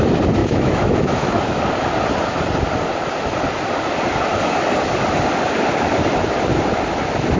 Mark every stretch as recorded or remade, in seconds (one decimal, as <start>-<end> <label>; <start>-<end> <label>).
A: 0.0-0.4 recorded; 0.4-1.4 remade; 1.4-7.4 recorded